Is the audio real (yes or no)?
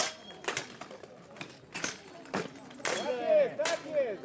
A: yes